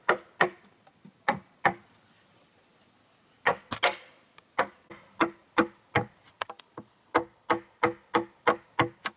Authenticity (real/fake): real